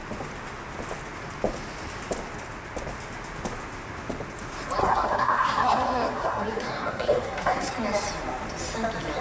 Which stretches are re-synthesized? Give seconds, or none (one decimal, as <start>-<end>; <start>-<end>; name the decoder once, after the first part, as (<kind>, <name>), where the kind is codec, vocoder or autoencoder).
4.8-7.7 (codec, SNAC)

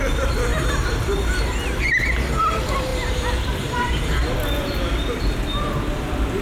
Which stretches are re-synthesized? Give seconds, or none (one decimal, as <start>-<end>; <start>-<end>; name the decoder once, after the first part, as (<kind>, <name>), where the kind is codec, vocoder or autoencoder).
2.9-4.3 (vocoder, BigVGAN v2)

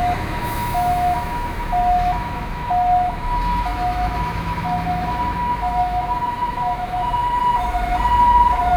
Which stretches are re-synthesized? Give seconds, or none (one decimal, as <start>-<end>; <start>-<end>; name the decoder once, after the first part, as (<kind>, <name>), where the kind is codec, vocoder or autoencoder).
0.0-7.2 (autoencoder, DAC-VAE); 8.2-8.8